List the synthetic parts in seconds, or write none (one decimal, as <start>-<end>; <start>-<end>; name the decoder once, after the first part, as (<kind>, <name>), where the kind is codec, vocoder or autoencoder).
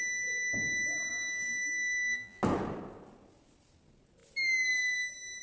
1.1-2.4 (vocoder, BigVGAN v2)